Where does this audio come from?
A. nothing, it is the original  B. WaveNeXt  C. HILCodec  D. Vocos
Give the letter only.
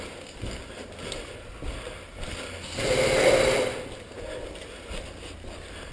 A